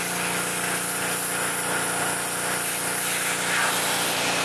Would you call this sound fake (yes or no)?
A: no